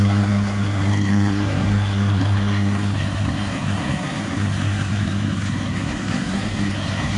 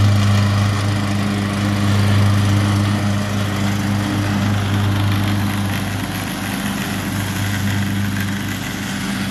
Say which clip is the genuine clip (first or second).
second